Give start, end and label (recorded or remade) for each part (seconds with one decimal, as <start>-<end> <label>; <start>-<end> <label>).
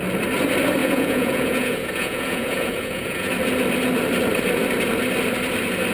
0.0-0.8 recorded; 0.8-3.3 remade; 3.3-5.9 recorded